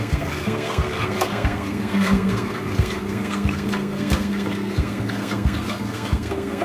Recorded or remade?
remade